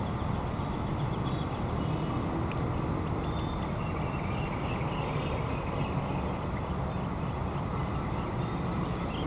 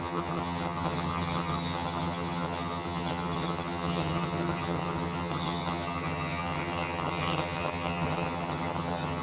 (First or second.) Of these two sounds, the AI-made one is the second